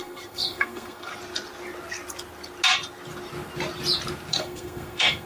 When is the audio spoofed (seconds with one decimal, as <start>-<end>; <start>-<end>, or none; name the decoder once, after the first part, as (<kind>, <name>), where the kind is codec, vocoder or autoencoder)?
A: 0.0-1.1 (codec, SNAC); 4.3-5.3

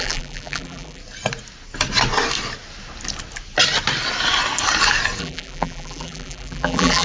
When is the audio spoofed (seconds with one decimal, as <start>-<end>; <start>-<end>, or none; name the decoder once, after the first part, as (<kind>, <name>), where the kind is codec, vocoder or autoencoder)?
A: 0.0-1.0 (vocoder, BigVGAN v2); 5.2-7.0

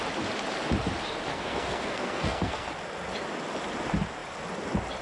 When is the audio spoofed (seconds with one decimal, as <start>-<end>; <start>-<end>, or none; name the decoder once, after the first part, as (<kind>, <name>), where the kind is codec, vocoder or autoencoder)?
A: 1.3-2.7 (codec, SNAC)

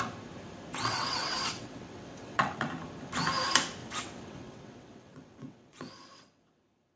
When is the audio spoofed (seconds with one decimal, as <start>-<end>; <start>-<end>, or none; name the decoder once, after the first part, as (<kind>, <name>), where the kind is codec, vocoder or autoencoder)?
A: 0.7-2.7 (vocoder, WaveNeXt); 3.8-6.5

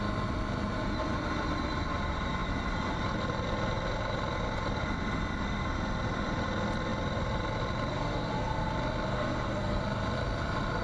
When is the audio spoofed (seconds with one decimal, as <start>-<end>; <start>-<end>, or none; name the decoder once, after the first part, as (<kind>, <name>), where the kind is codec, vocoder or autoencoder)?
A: 7.9-8.7 (codec, SNAC); 9.1-9.8

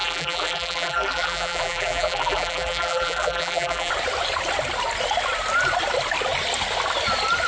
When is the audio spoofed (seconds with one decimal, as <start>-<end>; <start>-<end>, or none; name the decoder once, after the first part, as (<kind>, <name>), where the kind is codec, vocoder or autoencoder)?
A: 0.0-3.9 (vocoder, BigVGAN v2)